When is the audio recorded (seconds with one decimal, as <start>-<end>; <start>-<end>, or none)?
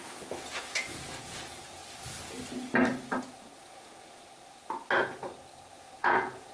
1.8-3.2; 4.2-5.7